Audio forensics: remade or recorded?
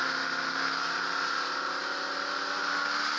recorded